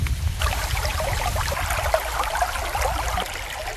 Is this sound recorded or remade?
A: recorded